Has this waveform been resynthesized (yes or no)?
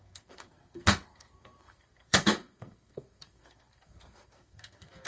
yes